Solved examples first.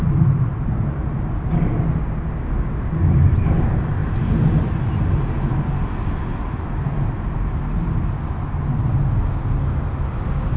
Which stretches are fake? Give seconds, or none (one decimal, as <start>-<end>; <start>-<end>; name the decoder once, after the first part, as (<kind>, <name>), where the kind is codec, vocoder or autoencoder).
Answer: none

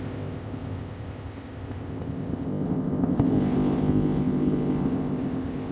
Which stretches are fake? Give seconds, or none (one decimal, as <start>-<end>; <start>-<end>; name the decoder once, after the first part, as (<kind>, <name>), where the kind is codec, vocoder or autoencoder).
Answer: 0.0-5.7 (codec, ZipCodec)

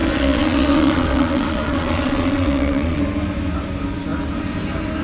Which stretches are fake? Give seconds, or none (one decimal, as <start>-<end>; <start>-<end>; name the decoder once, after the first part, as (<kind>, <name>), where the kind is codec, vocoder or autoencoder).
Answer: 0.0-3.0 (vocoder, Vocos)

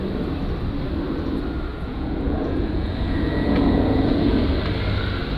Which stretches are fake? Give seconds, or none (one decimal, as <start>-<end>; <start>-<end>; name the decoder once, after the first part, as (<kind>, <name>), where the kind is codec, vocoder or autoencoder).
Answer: 1.7-4.4 (vocoder, Vocos)

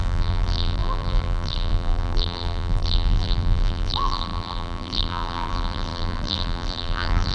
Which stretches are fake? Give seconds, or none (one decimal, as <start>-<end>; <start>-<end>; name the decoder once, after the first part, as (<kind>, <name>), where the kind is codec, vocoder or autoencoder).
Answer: 0.0-7.3 (vocoder, BigVGAN v2)

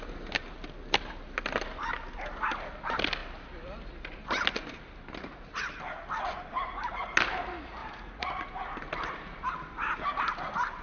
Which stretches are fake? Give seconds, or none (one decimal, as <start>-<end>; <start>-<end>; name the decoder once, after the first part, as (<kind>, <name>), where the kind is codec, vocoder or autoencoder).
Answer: 7.8-8.5 (vocoder, Vocos)